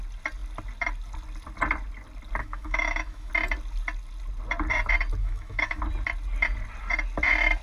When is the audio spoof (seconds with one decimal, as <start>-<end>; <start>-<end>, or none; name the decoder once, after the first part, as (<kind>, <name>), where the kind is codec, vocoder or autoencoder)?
2.4-3.3 (autoencoder, DAC-VAE); 5.2-5.8